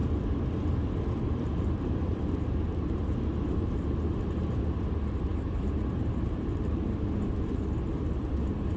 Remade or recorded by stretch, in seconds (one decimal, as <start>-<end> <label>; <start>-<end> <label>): 0.0-4.6 remade; 4.6-5.3 recorded; 5.3-6.8 remade; 6.8-8.8 recorded